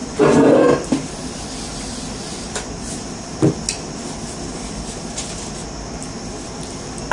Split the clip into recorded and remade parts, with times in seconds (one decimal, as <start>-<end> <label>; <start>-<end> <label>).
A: 0.0-7.1 recorded

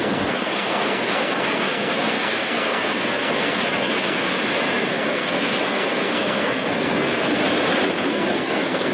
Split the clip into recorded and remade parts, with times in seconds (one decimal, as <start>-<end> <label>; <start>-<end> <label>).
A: 0.0-4.3 remade; 4.3-4.9 recorded; 4.9-7.4 remade; 7.4-8.1 recorded; 8.1-8.9 remade